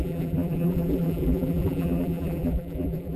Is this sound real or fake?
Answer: fake